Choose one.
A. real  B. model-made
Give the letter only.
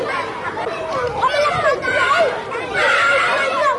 A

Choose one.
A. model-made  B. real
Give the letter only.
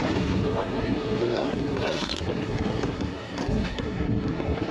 A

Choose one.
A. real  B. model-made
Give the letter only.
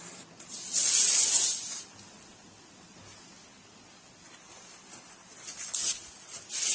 A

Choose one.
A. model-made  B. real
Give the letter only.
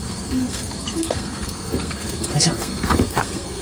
A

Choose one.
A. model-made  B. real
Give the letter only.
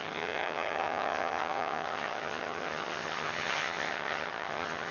A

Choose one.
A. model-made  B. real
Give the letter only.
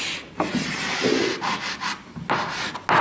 B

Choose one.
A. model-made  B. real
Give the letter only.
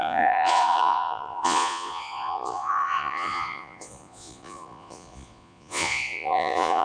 A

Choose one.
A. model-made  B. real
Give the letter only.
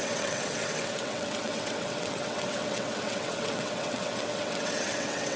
A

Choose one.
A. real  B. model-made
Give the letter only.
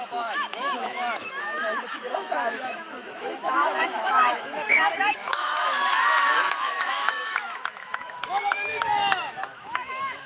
B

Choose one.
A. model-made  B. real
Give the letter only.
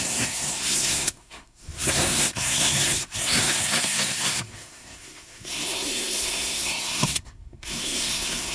A